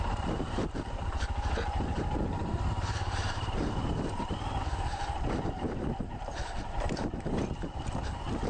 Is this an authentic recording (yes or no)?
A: no